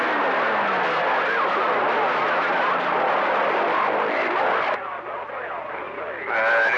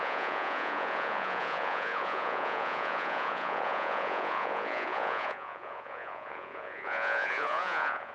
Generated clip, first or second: second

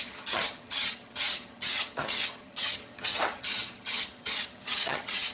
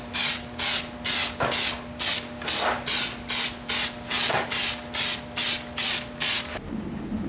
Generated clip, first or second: first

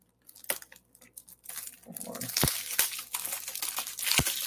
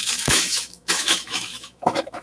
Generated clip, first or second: second